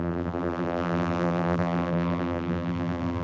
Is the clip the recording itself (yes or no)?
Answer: no